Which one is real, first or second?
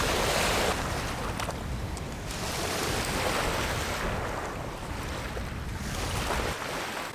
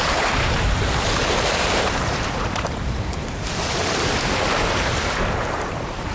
first